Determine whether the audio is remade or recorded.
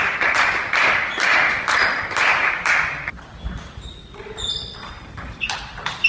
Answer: remade